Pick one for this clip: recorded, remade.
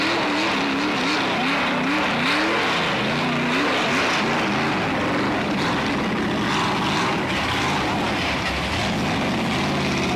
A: recorded